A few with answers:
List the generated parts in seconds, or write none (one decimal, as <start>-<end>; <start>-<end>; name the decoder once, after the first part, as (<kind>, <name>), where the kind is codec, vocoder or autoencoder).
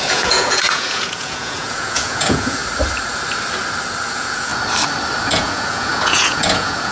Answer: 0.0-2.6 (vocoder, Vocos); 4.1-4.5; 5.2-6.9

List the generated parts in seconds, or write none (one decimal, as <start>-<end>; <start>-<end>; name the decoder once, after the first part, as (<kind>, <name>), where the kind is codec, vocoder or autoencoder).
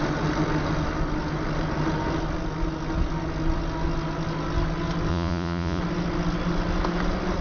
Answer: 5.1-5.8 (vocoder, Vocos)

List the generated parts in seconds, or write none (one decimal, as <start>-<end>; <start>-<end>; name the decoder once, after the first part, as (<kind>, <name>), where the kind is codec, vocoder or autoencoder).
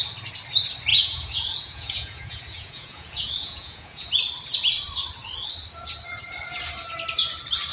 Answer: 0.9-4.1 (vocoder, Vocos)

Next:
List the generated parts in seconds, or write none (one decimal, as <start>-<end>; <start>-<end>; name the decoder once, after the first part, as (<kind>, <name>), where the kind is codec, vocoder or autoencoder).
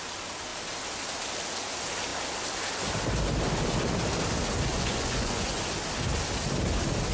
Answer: 4.7-5.6 (vocoder, Vocos)